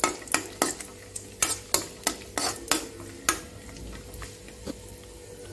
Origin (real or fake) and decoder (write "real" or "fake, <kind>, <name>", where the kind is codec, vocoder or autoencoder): real